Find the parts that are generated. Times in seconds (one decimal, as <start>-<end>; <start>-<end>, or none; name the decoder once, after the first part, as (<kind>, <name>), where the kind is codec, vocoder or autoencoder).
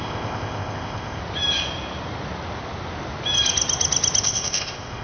0.0-1.2 (codec, ZipCodec); 4.2-5.0